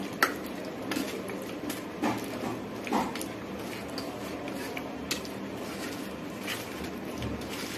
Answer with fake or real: real